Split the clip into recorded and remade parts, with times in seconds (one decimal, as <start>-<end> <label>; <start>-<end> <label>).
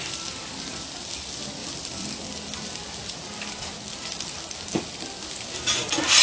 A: 0.0-1.6 recorded; 1.6-2.2 remade; 2.2-6.2 recorded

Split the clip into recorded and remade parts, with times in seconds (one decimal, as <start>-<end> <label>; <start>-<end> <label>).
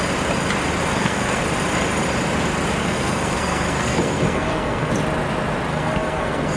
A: 0.0-0.9 recorded; 0.9-1.4 remade; 1.4-2.8 recorded; 2.8-4.9 remade; 4.9-5.7 recorded; 5.7-6.6 remade